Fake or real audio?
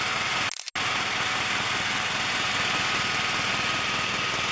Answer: real